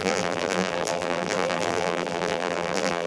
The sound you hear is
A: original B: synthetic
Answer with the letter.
B